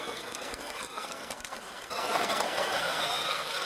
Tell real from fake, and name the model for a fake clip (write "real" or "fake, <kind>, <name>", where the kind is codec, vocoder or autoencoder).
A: fake, codec, SNAC